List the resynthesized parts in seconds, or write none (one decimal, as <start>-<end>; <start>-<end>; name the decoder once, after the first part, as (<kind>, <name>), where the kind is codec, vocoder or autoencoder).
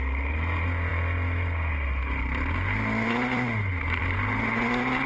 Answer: none